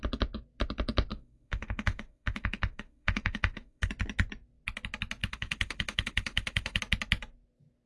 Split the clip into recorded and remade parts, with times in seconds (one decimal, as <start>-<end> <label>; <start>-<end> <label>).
0.0-1.1 recorded; 1.1-3.9 remade; 3.9-5.2 recorded; 5.2-6.8 remade; 6.8-7.9 recorded